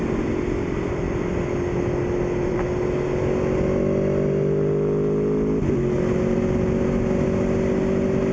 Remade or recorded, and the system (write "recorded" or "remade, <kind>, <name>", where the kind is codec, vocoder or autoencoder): recorded